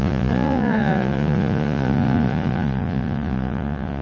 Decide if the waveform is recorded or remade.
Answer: remade